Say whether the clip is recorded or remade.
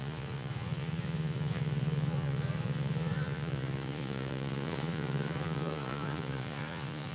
remade